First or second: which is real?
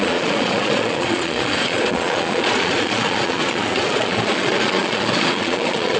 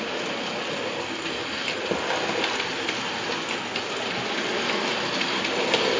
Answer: second